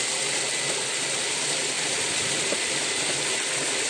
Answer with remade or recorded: recorded